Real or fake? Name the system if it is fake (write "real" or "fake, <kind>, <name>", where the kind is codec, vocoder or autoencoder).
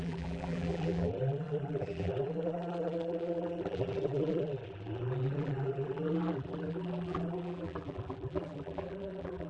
fake, vocoder, BigVGAN v2